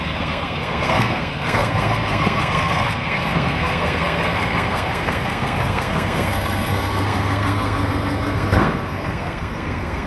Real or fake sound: fake